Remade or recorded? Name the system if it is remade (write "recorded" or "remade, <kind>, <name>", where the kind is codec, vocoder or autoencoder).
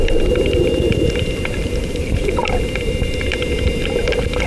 recorded